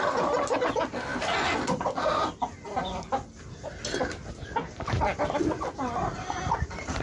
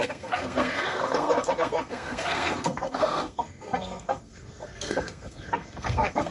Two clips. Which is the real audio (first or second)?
first